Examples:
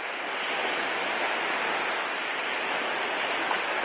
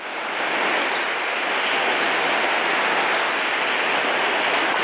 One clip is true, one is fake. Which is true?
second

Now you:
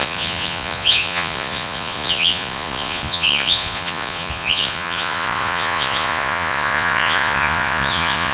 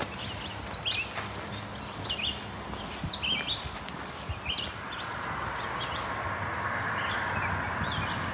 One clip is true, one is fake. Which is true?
second